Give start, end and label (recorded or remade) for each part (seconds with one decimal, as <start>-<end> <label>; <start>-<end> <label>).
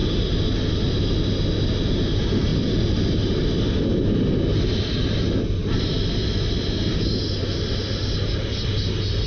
0.0-5.6 recorded; 5.6-8.0 remade; 8.0-9.3 recorded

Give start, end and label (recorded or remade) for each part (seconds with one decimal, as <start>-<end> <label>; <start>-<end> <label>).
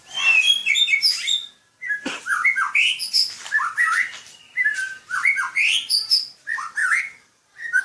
0.0-0.6 remade; 0.6-3.1 recorded; 3.1-6.8 remade; 6.8-7.8 recorded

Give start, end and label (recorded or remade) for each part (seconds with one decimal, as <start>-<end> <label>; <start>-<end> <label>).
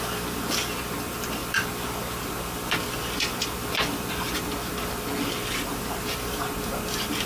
0.0-7.3 recorded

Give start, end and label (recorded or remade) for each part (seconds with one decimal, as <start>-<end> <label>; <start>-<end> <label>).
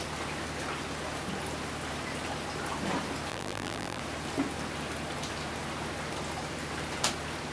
0.0-3.3 recorded; 3.3-4.0 remade; 4.0-7.5 recorded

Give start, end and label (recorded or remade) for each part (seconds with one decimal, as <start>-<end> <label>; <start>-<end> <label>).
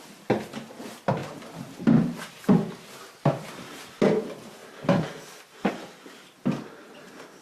0.0-1.2 recorded; 1.2-2.4 remade; 2.4-7.4 recorded